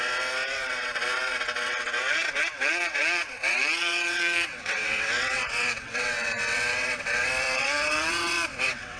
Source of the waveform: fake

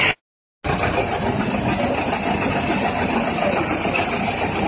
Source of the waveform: real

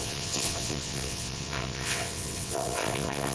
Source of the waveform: fake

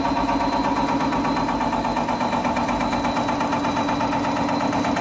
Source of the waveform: real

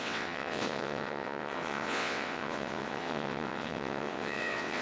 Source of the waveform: fake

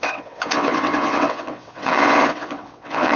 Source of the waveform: fake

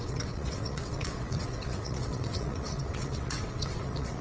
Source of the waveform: fake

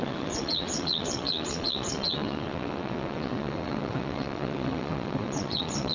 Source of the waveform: fake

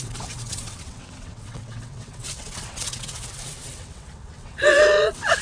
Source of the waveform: fake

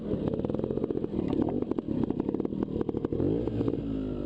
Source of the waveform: real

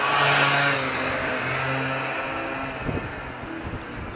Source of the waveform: real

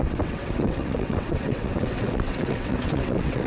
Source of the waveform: fake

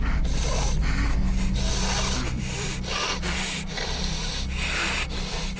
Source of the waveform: real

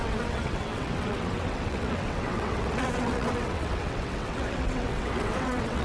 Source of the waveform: fake